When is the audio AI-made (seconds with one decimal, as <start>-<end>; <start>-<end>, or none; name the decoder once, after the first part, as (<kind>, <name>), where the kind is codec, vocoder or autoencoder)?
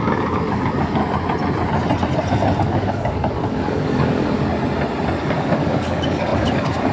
0.0-1.0 (codec, DAC); 2.6-4.5; 5.2-6.9